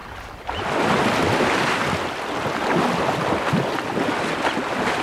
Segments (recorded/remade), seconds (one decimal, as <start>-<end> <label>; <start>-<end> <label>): 0.0-5.0 recorded